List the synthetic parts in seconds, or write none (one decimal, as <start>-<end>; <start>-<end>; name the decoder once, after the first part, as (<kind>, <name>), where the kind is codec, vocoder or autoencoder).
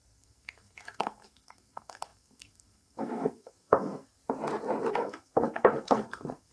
0.0-4.2 (codec, SNAC); 4.9-6.5